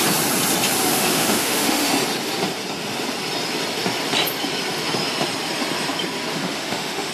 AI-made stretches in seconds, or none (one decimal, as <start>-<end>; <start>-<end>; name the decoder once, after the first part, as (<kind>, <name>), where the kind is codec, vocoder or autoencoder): 0.9-1.9 (autoencoder, DAC-VAE); 6.3-7.1